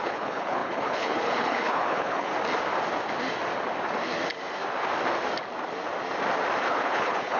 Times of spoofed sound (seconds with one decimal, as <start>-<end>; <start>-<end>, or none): 0.0-2.3; 6.6-7.4